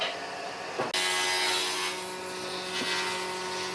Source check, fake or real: real